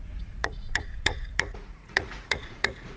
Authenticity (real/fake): fake